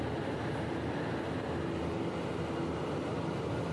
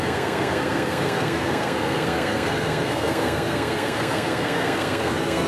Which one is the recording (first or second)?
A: first